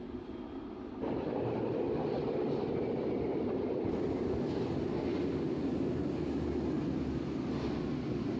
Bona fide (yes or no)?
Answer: yes